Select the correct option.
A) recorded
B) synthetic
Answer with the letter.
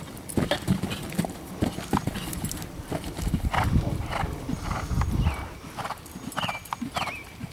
A